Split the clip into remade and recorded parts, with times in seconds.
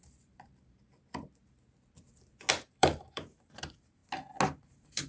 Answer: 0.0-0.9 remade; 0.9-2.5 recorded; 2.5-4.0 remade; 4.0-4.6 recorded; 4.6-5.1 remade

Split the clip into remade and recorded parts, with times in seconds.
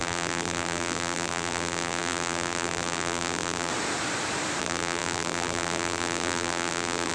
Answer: 0.0-3.7 remade; 3.7-4.6 recorded; 4.6-7.1 remade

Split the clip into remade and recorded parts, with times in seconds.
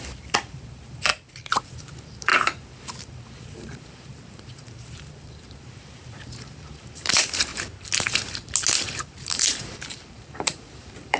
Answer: 0.0-1.1 remade; 1.1-1.6 recorded; 1.6-7.5 remade; 7.5-9.0 recorded; 9.0-11.2 remade